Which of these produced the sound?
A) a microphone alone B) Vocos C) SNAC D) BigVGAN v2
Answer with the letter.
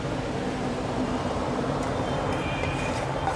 D